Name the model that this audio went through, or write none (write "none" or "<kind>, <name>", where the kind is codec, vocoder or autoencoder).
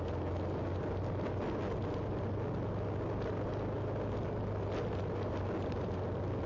none